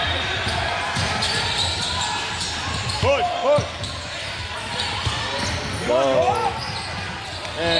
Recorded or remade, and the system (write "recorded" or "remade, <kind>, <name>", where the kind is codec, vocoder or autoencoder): recorded